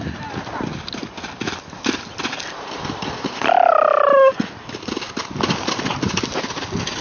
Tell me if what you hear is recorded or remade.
recorded